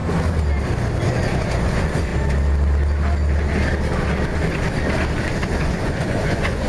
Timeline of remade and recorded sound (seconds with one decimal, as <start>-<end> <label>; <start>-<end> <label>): 0.0-1.0 recorded; 1.0-2.1 remade; 2.1-5.6 recorded; 5.6-6.7 remade